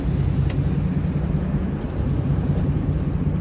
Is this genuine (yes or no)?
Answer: yes